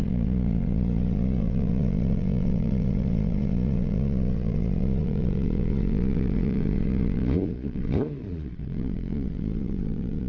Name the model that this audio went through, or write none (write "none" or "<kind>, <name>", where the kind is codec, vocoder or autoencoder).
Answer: vocoder, Vocos